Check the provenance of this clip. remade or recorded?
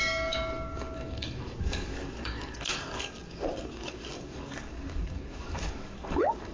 remade